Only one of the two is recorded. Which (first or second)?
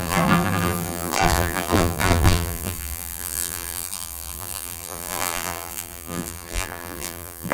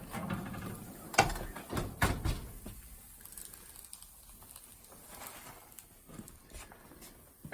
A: second